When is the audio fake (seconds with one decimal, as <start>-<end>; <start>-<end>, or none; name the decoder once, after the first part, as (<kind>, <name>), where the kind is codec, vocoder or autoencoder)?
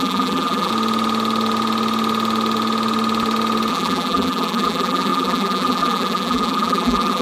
0.0-0.7 (vocoder, BigVGAN v2); 3.7-7.2